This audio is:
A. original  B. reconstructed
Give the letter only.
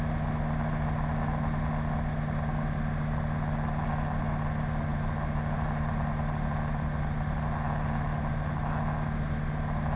A